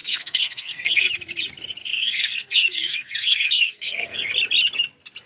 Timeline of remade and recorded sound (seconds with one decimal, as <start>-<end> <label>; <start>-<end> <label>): 0.0-1.1 remade; 1.1-1.8 recorded; 1.8-4.3 remade; 4.3-5.3 recorded